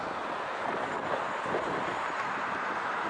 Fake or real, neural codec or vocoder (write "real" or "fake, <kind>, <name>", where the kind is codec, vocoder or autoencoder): real